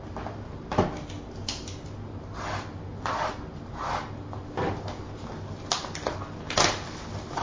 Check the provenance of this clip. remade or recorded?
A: recorded